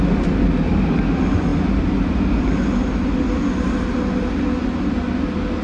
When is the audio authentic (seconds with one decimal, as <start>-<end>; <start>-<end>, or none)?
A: 0.0-5.6